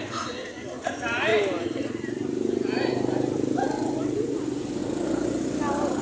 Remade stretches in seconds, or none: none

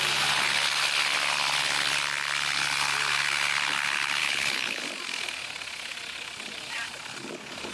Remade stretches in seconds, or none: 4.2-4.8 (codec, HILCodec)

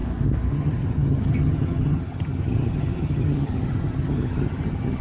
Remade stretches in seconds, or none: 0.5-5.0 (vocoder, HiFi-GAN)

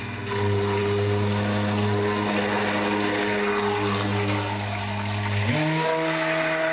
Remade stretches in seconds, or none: none

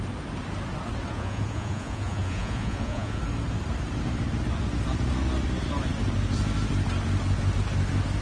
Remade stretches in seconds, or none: 1.1-3.2 (vocoder, Vocos)

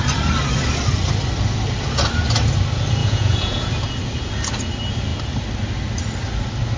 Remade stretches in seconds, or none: 3.0-3.7 (vocoder, Vocos)